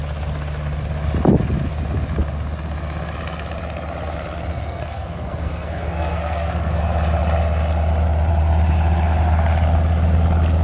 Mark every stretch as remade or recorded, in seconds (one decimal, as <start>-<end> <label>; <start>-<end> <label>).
0.0-4.5 recorded; 4.5-6.8 remade; 6.8-10.6 recorded